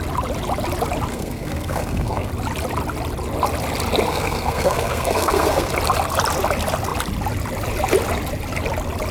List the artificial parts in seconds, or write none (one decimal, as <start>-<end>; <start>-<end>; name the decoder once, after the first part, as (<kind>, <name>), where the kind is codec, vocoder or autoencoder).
1.1-2.3 (codec, SNAC); 4.1-5.7

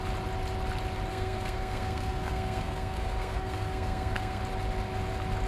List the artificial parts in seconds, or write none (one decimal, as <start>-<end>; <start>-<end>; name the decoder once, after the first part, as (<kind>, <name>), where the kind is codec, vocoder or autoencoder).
1.1-4.4 (codec, SNAC)